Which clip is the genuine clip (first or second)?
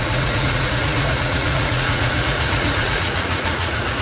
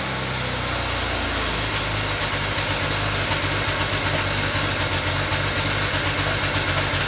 second